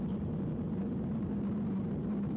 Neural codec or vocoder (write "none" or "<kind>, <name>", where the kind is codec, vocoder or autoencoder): none